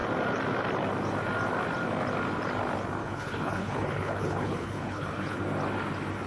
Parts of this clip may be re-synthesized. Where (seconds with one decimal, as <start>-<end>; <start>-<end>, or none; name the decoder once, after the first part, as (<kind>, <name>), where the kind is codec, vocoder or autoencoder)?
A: 3.0-5.4 (codec, HILCodec)